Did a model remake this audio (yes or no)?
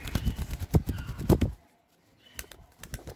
no